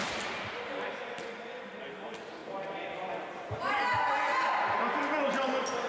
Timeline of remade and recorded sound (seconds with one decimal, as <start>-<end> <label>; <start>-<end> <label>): 0.0-5.9 recorded